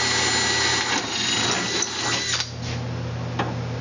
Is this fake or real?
real